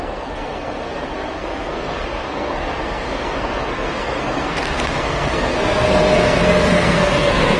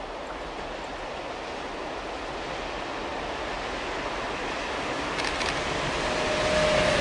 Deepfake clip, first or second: first